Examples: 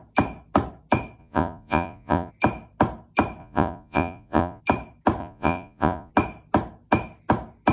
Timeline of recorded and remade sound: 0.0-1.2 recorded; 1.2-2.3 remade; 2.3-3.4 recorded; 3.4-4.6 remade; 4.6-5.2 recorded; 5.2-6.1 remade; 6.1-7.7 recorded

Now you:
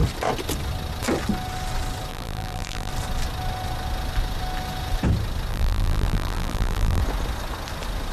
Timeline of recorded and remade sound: 0.0-2.1 recorded; 2.1-2.9 remade; 2.9-5.5 recorded; 5.5-7.0 remade; 7.0-8.1 recorded

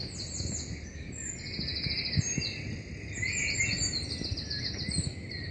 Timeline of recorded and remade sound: 0.0-5.5 recorded